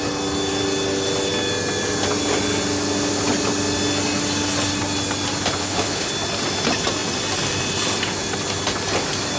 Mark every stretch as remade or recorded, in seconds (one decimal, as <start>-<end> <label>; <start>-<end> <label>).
0.0-5.6 recorded; 5.6-6.1 remade; 6.1-9.4 recorded